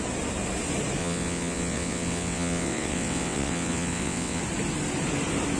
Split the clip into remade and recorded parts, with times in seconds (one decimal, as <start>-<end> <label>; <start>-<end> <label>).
0.0-1.0 recorded; 1.0-4.4 remade; 4.4-5.6 recorded